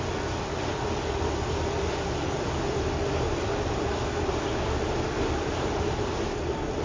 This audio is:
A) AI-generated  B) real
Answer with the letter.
B